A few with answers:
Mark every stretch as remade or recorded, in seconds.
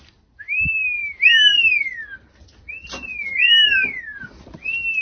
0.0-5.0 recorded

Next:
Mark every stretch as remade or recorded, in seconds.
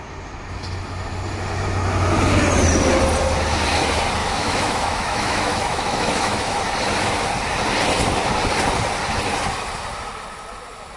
0.0-4.2 recorded; 4.2-6.6 remade; 6.6-11.0 recorded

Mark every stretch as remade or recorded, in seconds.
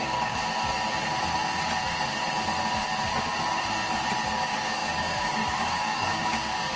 0.0-0.4 remade; 0.4-4.3 recorded; 4.3-6.8 remade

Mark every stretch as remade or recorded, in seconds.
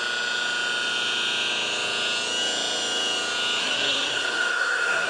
0.0-3.6 recorded; 3.6-5.1 remade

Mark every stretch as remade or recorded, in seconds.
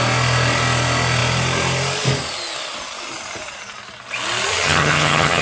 0.0-4.5 recorded; 4.5-5.4 remade